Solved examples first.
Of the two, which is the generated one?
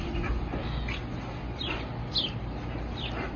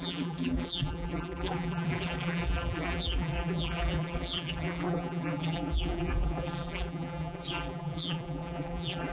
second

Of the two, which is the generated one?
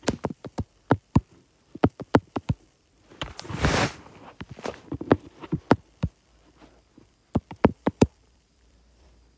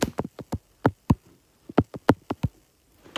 first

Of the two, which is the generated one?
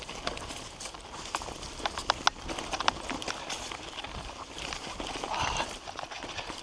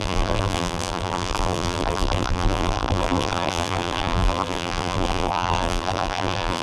second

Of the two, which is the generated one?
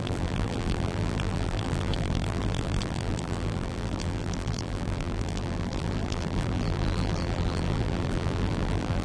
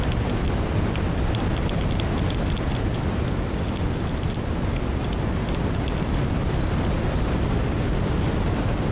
first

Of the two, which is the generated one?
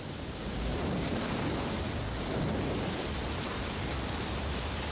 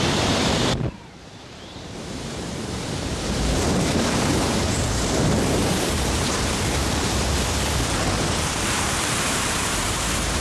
second